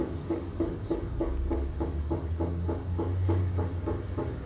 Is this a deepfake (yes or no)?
yes